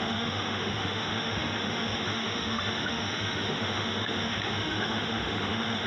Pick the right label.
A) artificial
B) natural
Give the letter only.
A